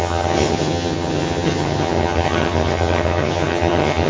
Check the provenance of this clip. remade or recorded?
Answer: remade